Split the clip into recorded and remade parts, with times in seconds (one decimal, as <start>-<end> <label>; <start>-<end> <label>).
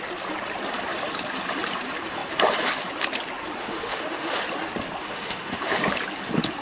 0.0-3.6 recorded; 3.6-4.4 remade; 4.4-5.0 recorded; 5.0-5.8 remade; 5.8-6.6 recorded